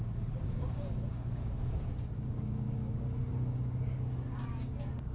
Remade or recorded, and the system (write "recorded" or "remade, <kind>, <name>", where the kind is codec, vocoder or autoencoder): remade, codec, DAC